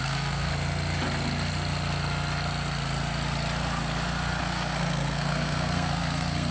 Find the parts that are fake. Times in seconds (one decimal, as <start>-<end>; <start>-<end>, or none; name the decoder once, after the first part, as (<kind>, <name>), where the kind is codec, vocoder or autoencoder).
0.0-0.5 (codec, SNAC); 4.4-6.5